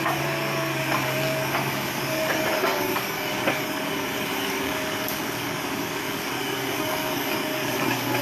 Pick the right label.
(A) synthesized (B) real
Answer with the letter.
A